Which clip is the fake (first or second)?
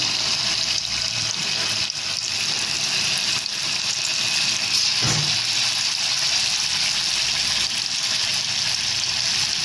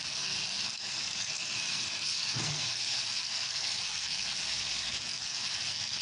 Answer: second